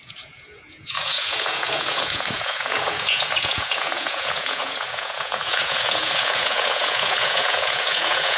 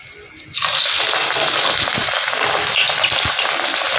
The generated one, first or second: first